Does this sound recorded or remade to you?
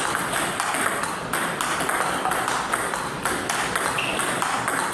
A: recorded